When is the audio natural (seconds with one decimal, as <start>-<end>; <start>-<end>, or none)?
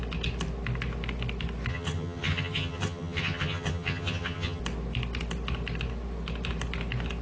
0.0-1.7; 4.6-7.2